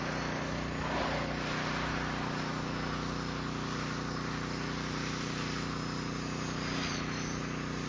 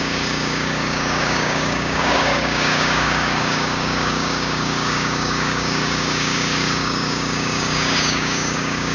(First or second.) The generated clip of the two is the second